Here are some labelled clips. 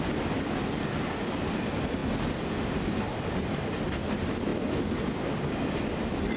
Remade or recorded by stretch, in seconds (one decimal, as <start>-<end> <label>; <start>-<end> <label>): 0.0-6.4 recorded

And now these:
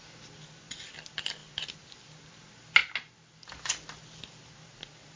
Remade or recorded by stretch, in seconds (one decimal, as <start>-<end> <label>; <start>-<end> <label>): 0.0-5.2 recorded

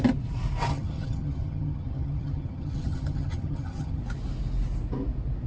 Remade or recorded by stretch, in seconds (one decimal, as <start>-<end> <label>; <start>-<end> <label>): 0.0-0.7 recorded; 0.7-4.0 remade; 4.0-5.5 recorded

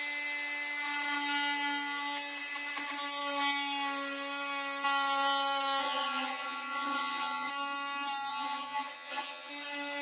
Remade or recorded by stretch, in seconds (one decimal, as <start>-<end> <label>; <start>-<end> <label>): 0.0-5.8 recorded; 5.8-7.5 remade; 7.5-8.3 recorded; 8.3-9.5 remade; 9.5-10.0 recorded